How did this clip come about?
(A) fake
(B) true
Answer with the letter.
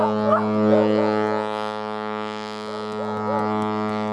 B